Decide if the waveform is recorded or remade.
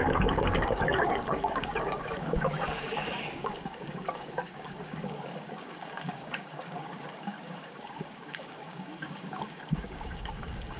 remade